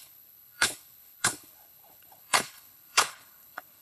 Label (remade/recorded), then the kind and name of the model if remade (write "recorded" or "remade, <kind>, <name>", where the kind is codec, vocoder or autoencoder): remade, codec, HILCodec